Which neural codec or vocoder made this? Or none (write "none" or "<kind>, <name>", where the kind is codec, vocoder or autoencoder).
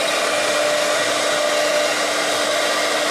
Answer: none